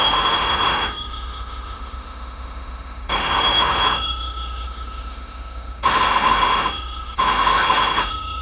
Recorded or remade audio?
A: remade